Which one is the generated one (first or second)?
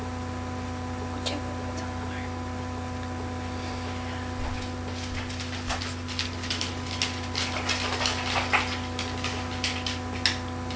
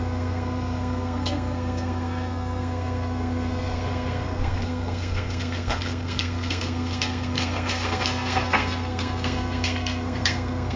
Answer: second